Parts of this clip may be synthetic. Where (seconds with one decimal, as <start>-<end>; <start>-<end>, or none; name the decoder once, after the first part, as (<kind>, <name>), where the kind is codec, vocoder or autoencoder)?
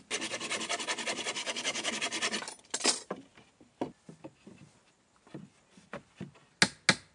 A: 1.4-1.9 (codec, DAC)